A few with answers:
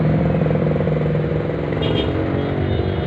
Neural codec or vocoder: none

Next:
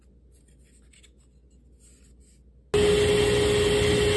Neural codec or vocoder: none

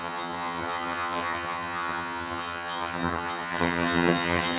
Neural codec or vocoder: vocoder, HiFi-GAN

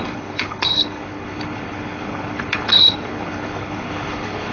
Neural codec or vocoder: codec, HILCodec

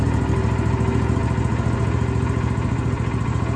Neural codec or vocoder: none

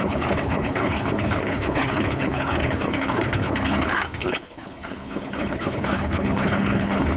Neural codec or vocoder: codec, HILCodec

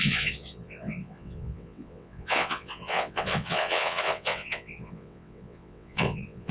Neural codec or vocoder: vocoder, WaveNeXt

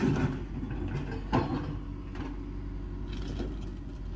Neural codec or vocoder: none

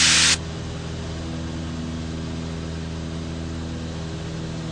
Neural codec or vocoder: none